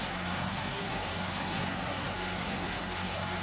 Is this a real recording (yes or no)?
no